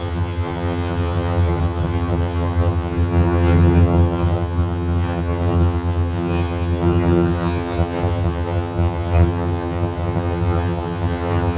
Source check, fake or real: fake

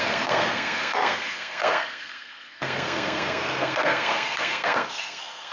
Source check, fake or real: fake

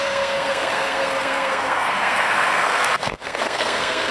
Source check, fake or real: fake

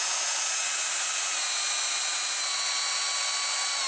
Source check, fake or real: real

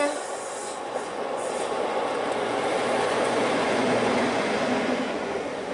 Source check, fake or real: fake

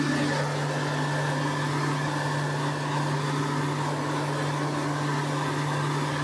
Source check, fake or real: real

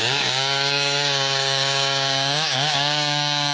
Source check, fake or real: fake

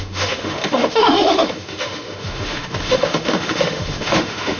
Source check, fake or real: fake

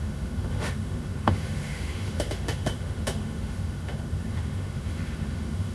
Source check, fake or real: fake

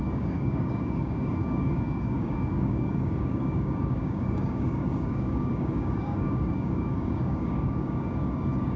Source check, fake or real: fake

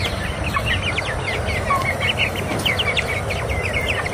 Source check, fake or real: real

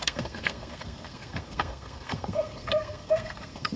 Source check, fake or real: fake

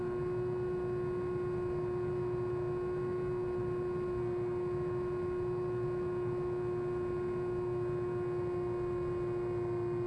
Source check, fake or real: real